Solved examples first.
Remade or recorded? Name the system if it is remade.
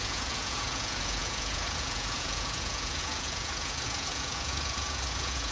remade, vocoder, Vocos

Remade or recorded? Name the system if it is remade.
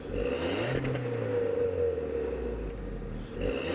recorded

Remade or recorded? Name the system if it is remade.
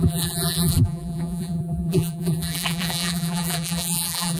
remade, vocoder, BigVGAN v2